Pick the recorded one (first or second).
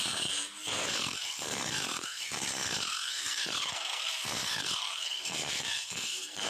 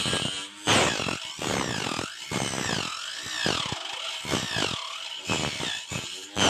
second